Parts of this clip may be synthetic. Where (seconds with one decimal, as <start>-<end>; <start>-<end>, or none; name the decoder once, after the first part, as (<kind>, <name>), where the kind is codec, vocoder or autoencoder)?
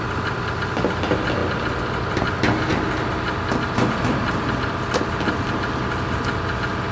none